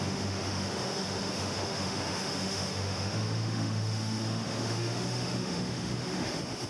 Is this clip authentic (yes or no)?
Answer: no